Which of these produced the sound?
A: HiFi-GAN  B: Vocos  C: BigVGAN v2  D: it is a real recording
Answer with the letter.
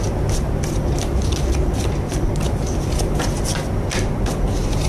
D